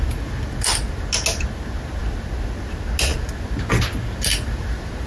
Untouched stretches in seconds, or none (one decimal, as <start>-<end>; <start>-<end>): 0.0-5.1

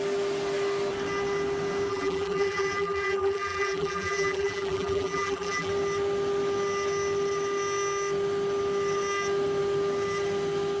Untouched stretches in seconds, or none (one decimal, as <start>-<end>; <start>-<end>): 0.0-1.9; 5.7-10.8